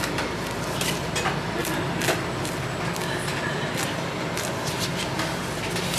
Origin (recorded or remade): recorded